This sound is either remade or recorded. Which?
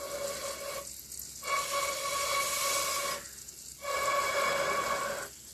recorded